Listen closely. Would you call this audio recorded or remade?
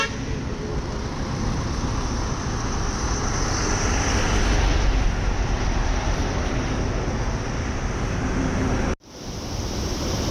recorded